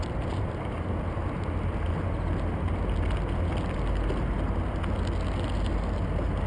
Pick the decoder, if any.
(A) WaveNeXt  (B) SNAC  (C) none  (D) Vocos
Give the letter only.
C